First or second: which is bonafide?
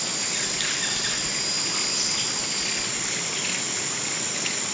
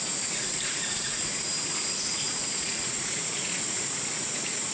first